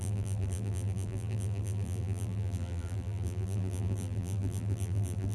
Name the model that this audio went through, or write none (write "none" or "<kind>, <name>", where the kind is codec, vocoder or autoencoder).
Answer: vocoder, BigVGAN v2